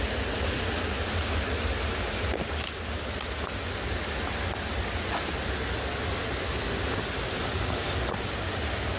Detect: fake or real real